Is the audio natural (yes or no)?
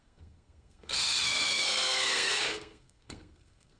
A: no